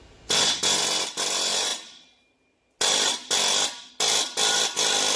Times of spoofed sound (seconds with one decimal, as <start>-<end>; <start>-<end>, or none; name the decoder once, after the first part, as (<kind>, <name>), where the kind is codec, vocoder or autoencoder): none